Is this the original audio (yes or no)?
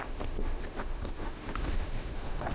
no